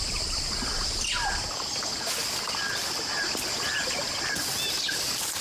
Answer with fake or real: real